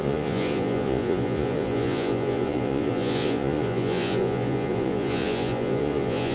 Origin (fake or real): fake